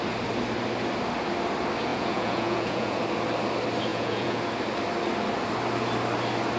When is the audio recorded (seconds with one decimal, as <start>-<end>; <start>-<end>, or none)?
0.0-1.9; 3.0-3.9; 4.4-6.6